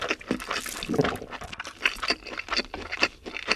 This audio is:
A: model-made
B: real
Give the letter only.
B